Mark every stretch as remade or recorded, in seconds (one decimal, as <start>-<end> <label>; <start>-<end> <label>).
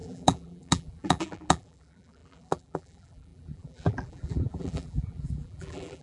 0.0-6.0 remade